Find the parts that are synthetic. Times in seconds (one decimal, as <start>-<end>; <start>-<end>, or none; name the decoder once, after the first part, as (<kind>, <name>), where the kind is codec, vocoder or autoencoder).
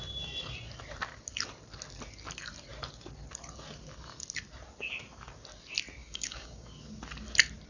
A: 6.0-6.7 (codec, DAC)